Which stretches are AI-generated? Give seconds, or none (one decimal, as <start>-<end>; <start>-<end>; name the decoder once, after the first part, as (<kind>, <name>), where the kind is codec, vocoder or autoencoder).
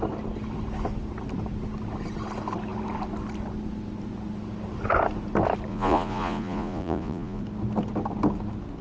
5.7-7.4 (vocoder, Vocos)